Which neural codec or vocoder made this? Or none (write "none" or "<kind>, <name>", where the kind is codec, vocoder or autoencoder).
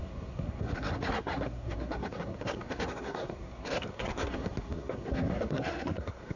codec, SNAC